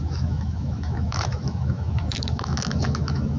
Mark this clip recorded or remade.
remade